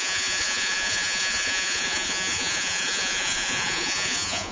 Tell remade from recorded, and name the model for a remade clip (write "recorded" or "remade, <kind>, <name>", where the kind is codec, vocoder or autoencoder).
remade, vocoder, Vocos